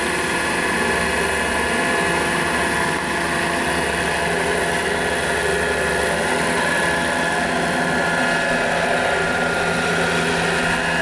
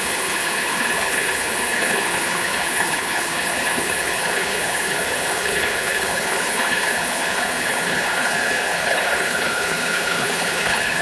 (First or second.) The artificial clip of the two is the second